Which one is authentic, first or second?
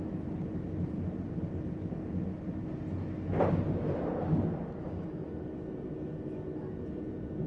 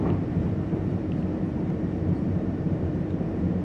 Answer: first